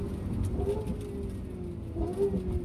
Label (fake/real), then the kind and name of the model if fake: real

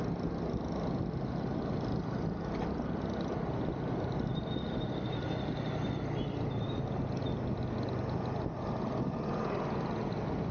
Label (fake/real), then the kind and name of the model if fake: real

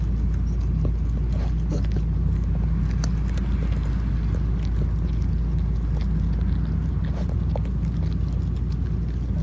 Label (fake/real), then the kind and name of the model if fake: real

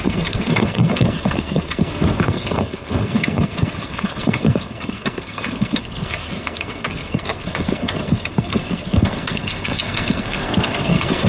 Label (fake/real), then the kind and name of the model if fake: fake, codec, SNAC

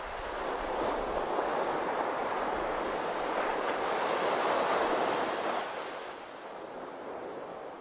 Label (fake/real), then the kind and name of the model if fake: real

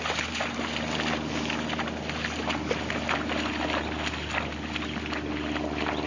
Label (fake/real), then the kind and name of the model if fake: real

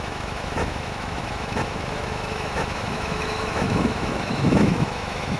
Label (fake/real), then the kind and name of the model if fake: fake, autoencoder, DAC-VAE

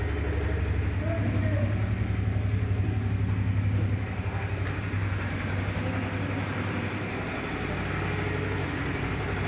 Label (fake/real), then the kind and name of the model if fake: real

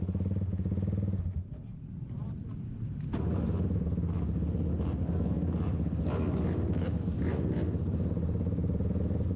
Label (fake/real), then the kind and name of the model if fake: real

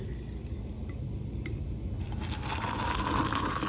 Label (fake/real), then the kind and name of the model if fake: real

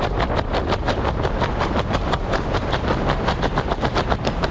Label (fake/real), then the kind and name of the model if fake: real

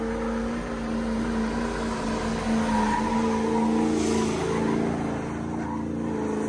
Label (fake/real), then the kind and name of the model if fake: real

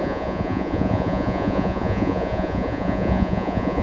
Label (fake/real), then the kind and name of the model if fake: fake, vocoder, Vocos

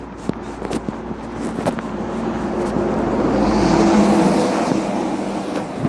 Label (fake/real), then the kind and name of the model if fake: real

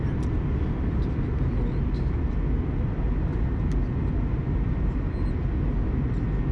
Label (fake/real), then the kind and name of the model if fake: real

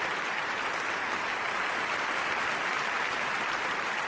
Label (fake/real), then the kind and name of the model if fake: real